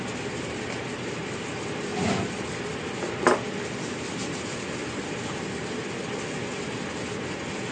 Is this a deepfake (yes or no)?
no